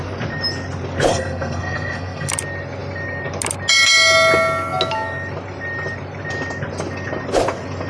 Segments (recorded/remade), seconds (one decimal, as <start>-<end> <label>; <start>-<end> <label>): 0.0-1.1 recorded; 1.1-2.3 remade; 2.3-7.9 recorded